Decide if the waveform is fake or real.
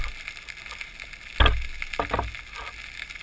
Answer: real